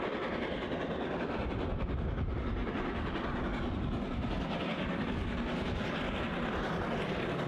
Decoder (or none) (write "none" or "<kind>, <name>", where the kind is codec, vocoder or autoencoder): none